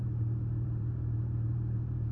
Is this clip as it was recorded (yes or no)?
no